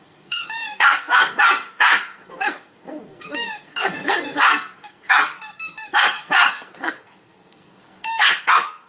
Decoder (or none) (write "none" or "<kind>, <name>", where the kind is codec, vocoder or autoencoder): codec, SNAC